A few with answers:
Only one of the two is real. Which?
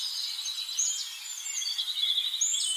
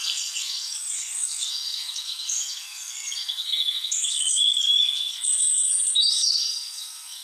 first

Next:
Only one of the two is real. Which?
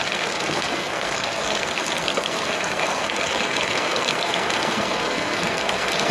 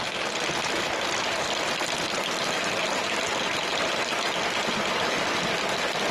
second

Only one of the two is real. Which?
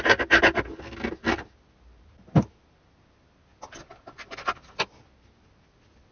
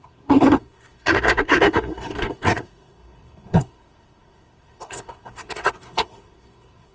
first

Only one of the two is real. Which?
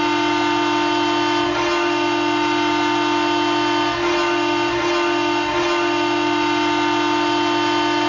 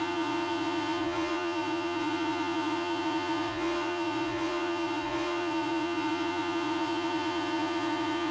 first